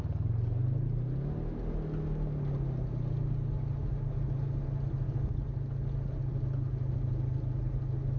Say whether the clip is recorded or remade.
recorded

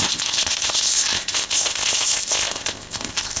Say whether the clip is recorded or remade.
remade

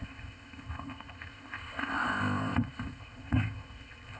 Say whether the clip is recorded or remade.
remade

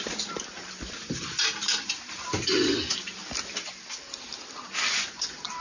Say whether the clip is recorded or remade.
recorded